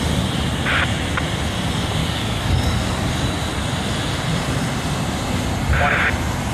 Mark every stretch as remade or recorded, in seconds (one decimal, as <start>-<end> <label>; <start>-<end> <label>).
0.0-2.0 recorded; 2.0-3.1 remade; 3.1-6.5 recorded